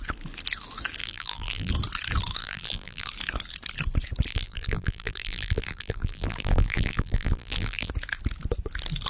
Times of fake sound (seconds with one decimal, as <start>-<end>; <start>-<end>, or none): 1.0-1.7; 2.4-3.1; 4.3-7.9